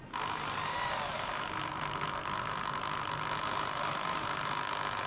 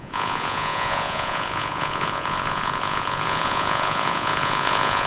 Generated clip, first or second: second